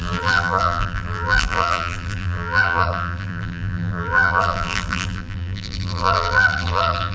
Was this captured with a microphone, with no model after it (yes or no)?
no